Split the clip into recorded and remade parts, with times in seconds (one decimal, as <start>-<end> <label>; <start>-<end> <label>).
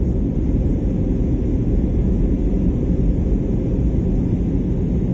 0.0-5.1 recorded